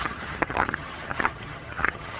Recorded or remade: remade